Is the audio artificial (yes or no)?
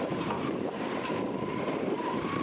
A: yes